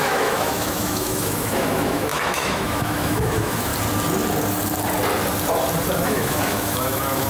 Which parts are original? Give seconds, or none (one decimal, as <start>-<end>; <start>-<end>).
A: 3.7-6.0